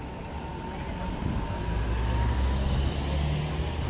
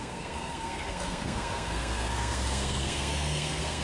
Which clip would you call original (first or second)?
first